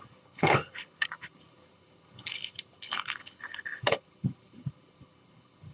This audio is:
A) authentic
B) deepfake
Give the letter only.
B